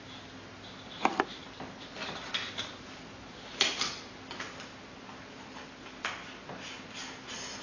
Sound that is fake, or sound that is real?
real